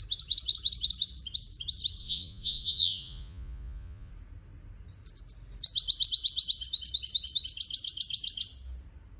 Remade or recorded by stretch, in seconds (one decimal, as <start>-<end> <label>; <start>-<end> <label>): 0.0-2.0 recorded; 2.0-4.1 remade; 4.1-9.2 recorded